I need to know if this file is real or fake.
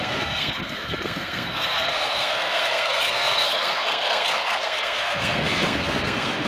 fake